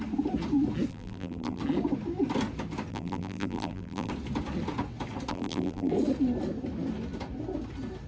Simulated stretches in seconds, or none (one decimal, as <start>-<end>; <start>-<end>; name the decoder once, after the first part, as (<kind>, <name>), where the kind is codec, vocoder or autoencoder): 0.9-1.6 (vocoder, BigVGAN v2); 2.9-4.1; 5.3-5.9